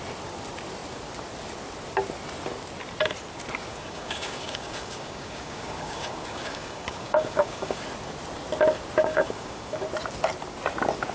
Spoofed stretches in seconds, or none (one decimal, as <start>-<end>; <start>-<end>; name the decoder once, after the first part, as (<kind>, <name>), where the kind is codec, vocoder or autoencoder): 3.7-7.8 (codec, DAC); 9.0-9.8